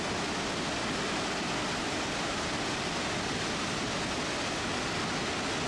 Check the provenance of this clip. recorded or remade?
recorded